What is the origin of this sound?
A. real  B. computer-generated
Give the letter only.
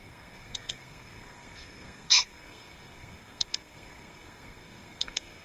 B